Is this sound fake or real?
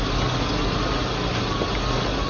real